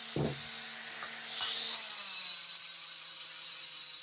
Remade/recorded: recorded